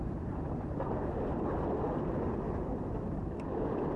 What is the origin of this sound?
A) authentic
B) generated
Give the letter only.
A